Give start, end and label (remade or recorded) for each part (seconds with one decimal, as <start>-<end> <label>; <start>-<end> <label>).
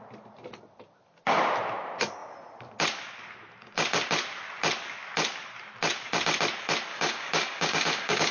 0.0-6.9 recorded; 6.9-8.3 remade